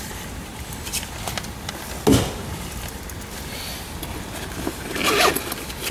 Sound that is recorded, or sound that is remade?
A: recorded